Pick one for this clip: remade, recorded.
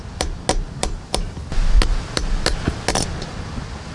recorded